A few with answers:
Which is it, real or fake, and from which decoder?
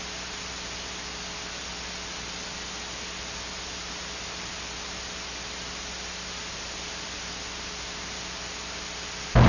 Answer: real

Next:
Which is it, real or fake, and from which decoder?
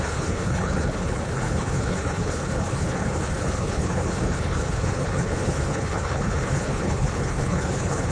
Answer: fake, codec, HILCodec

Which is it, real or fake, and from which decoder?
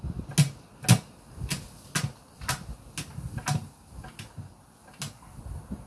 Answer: real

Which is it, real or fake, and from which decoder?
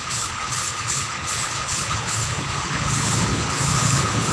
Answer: fake, codec, HILCodec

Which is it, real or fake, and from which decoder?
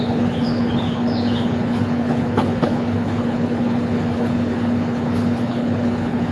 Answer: fake, codec, HILCodec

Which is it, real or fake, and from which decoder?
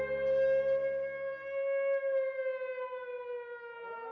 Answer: real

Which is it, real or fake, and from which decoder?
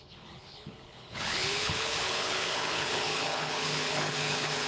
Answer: fake, codec, HILCodec